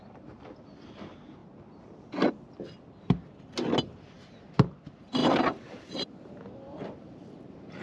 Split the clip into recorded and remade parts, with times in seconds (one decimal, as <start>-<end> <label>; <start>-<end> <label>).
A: 0.0-5.2 recorded; 5.2-6.3 remade; 6.3-7.8 recorded